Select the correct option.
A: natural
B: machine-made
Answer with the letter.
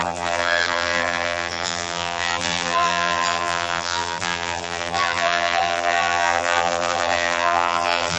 B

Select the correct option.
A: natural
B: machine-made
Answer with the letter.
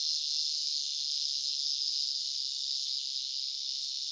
B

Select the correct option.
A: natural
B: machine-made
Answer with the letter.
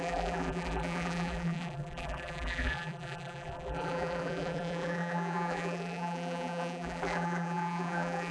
B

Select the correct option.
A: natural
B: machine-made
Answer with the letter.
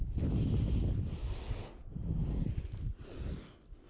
A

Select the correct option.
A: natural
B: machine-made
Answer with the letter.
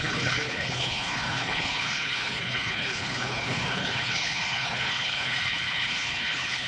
B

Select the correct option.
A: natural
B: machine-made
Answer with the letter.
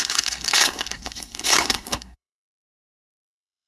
B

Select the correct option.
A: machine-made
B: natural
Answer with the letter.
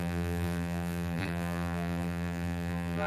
A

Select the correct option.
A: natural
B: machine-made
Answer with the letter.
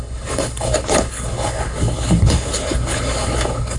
B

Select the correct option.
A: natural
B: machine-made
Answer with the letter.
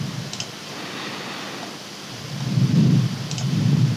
A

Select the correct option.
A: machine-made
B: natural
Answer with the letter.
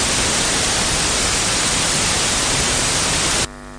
B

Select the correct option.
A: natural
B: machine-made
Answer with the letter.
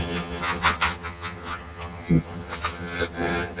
B